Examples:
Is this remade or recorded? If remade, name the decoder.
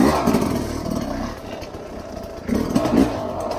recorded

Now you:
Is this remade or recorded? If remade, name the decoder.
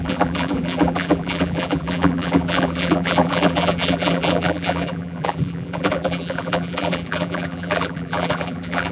remade, vocoder, BigVGAN v2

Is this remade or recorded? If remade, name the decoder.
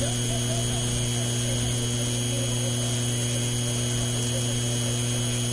recorded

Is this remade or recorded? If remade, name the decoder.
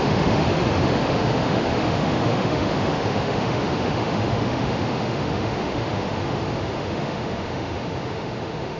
remade, autoencoder, DAC-VAE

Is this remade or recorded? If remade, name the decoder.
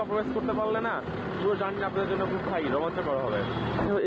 recorded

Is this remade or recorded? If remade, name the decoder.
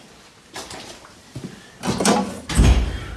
recorded